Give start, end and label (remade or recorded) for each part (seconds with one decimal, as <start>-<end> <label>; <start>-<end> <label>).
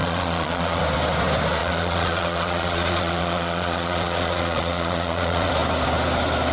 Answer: 0.0-0.8 remade; 0.8-1.6 recorded; 1.6-5.5 remade; 5.5-6.5 recorded